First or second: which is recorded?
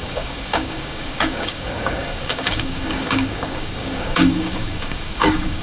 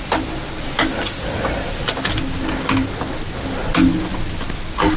second